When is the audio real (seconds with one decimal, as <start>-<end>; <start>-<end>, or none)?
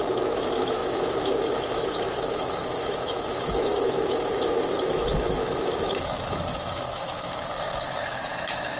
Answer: none